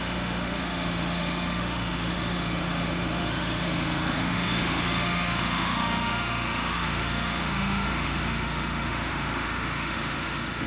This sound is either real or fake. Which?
fake